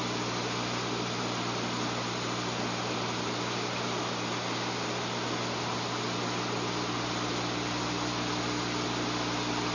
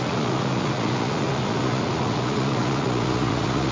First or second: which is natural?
first